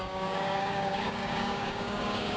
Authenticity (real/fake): fake